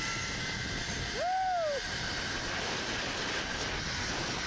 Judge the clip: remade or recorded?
recorded